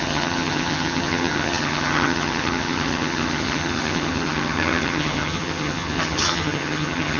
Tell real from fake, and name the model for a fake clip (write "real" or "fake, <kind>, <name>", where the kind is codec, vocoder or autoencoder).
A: fake, vocoder, HiFi-GAN